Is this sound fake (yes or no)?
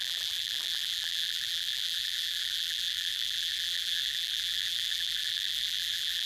yes